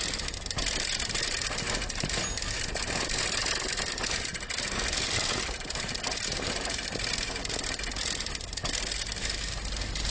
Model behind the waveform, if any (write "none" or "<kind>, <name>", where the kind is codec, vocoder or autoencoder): none